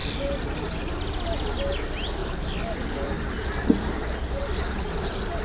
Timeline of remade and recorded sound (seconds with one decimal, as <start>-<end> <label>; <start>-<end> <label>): 0.0-5.4 recorded